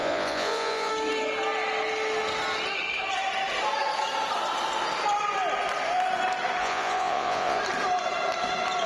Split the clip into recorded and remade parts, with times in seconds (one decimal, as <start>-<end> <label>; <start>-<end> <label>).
0.0-0.9 remade; 0.9-6.6 recorded; 6.6-7.6 remade; 7.6-8.9 recorded